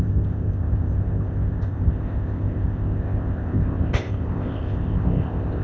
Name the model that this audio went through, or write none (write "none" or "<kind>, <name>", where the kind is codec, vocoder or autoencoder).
codec, ZipCodec